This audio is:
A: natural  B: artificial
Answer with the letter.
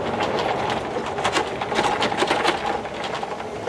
A